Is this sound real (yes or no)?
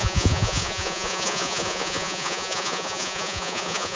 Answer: no